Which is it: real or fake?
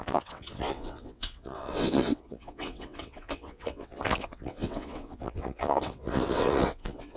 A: fake